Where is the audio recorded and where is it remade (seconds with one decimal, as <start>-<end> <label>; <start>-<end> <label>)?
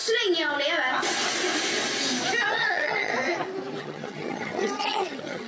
0.0-2.5 recorded; 2.5-3.1 remade; 3.1-3.8 recorded; 3.8-5.5 remade